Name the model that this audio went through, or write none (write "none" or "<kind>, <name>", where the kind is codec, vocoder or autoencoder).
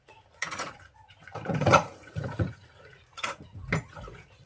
vocoder, Vocos